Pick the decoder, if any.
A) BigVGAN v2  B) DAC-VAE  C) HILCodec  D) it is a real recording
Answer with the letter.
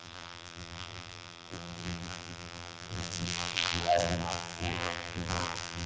A